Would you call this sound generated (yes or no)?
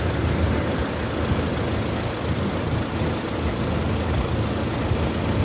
no